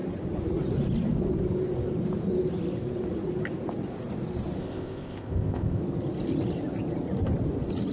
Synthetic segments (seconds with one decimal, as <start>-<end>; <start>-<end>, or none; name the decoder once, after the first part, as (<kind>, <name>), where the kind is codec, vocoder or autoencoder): 4.6-5.8 (codec, ZipCodec)